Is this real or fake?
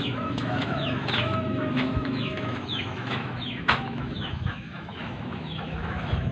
fake